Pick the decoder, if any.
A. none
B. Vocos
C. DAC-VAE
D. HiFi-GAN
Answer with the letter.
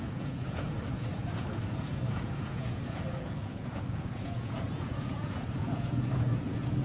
B